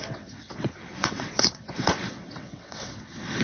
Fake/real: fake